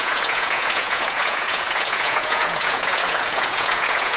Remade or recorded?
remade